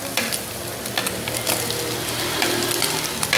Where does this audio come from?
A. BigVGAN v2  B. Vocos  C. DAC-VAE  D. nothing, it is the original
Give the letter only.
D